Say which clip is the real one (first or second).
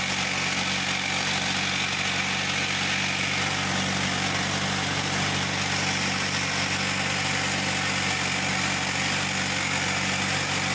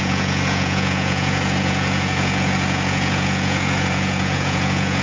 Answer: first